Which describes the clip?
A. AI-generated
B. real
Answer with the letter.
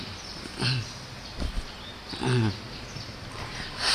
B